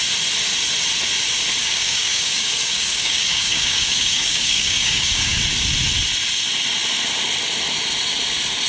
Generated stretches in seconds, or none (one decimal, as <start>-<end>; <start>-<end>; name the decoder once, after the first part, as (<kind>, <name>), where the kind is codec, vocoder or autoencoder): 1.6-5.4 (codec, DAC)